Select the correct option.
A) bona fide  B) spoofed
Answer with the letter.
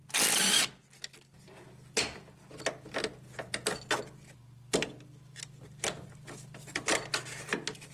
A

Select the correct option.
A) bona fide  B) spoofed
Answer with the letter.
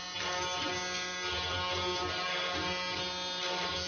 A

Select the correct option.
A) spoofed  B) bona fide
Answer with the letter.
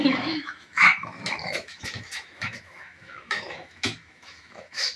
A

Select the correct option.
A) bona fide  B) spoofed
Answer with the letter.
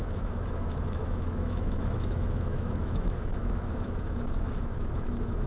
B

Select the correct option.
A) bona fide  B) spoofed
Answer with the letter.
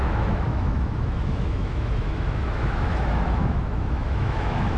B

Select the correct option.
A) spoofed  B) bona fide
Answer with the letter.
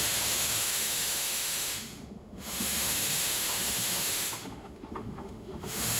A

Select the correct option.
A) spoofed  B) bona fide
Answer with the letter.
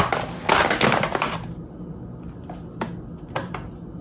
B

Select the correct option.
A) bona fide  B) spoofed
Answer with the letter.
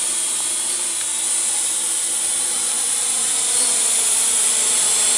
A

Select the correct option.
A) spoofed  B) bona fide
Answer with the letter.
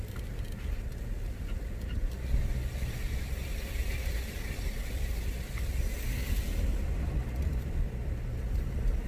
B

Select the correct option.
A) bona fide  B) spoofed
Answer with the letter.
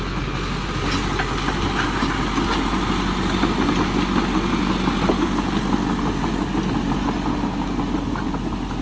A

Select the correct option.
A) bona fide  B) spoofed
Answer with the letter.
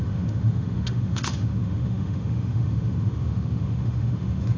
B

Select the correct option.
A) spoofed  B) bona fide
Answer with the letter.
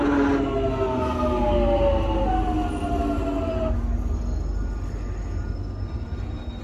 B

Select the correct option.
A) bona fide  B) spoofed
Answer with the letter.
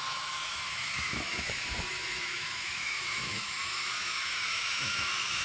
B